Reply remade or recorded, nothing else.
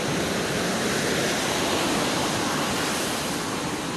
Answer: recorded